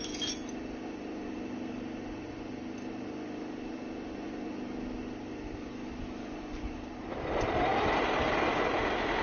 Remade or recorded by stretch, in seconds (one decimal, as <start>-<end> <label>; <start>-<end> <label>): 0.0-9.2 recorded